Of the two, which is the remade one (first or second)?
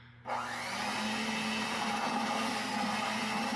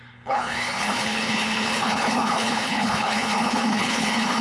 second